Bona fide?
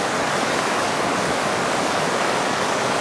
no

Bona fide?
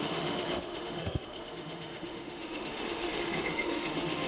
no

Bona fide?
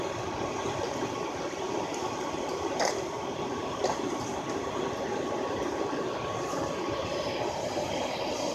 yes